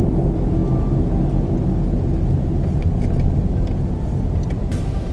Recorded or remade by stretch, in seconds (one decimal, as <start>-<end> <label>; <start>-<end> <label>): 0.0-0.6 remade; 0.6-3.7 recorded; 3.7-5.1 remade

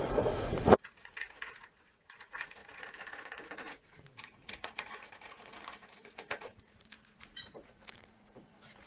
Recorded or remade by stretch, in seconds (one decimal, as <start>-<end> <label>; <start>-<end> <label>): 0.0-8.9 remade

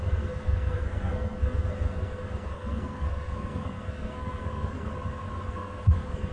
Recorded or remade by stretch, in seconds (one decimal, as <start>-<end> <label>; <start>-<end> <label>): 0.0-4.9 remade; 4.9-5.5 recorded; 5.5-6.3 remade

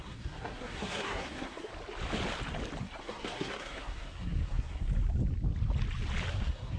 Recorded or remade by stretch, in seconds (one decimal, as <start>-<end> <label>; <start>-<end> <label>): 0.0-1.7 remade; 1.7-2.8 recorded; 2.8-4.9 remade; 4.9-6.3 recorded; 6.3-6.8 remade

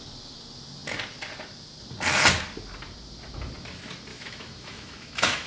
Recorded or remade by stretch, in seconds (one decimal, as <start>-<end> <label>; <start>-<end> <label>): 0.0-4.1 recorded; 4.1-5.5 remade